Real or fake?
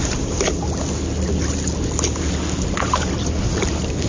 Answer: real